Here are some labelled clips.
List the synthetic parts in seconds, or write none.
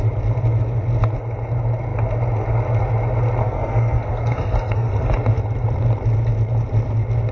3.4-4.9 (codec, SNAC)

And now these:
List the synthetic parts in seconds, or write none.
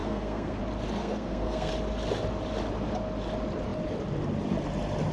0.0-0.6 (codec, SNAC); 1.0-1.7